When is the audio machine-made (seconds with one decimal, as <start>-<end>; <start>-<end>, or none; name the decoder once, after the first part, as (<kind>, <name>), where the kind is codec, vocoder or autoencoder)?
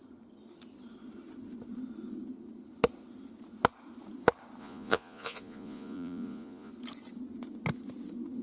4.6-6.7 (vocoder, Vocos)